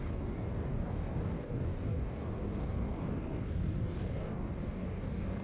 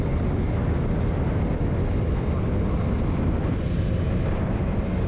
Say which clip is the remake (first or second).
first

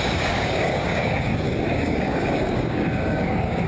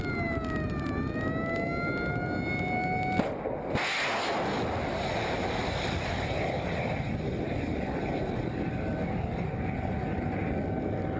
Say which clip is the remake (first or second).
first